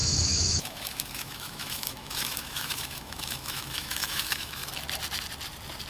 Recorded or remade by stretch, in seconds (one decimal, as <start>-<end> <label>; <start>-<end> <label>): 0.0-4.6 remade; 4.6-5.9 recorded